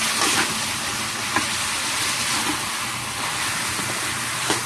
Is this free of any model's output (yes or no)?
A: yes